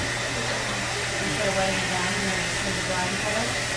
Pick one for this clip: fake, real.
real